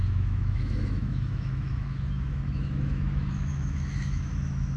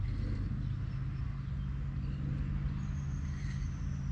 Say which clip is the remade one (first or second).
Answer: first